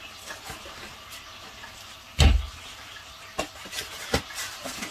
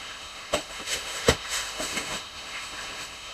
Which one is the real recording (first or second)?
first